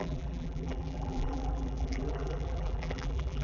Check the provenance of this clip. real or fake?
fake